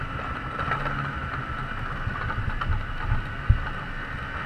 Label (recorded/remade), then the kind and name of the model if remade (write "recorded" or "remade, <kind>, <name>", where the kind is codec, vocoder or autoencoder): recorded